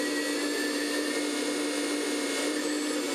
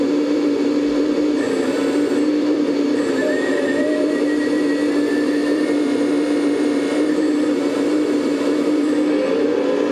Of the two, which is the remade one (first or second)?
second